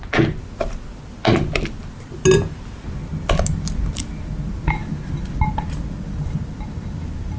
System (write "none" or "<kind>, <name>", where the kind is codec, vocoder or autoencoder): none